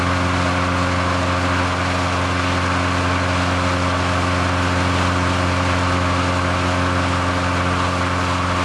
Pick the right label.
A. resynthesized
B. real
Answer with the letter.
B